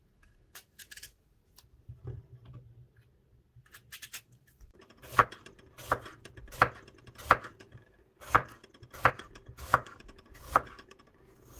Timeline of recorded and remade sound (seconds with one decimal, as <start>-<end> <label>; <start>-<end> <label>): 0.0-1.4 remade; 1.4-4.2 recorded; 4.2-5.2 remade; 5.2-7.4 recorded; 7.4-8.6 remade; 8.6-9.1 recorded; 9.1-11.6 remade

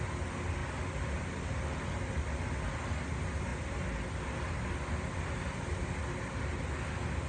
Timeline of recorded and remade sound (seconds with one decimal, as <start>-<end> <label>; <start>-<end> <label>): 0.0-7.3 recorded

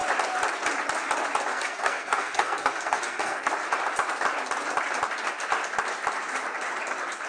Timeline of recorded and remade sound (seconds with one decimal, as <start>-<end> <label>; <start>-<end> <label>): 0.0-1.5 recorded; 1.5-3.5 remade; 3.5-7.3 recorded

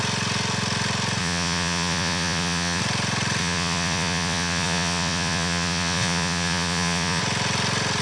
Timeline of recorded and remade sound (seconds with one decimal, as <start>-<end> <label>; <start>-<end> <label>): 0.0-1.2 recorded; 1.2-2.8 remade; 2.8-3.4 recorded; 3.4-7.2 remade; 7.2-8.0 recorded

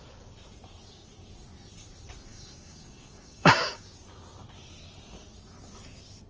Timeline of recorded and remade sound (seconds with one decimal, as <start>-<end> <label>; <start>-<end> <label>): 0.0-2.3 recorded; 2.3-3.8 remade; 3.8-6.3 recorded

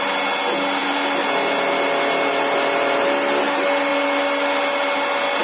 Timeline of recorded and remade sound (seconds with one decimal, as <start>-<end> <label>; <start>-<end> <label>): 0.0-5.4 recorded

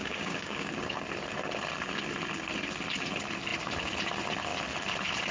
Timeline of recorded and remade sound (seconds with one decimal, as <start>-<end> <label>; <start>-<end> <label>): 0.0-0.7 remade; 0.7-5.3 recorded